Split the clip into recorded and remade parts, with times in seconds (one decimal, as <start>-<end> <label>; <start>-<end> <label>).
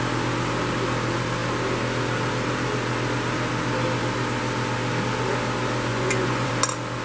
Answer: 0.0-5.9 recorded; 5.9-6.5 remade; 6.5-7.0 recorded